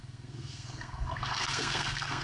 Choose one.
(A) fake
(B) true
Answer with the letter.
A